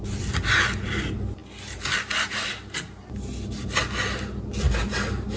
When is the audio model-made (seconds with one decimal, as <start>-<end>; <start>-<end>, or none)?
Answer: none